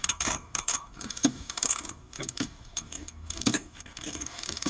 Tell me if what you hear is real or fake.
fake